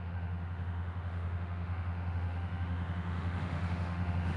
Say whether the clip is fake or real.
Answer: fake